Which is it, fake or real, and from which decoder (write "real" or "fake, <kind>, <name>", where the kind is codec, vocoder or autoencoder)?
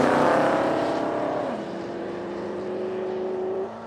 fake, vocoder, BigVGAN v2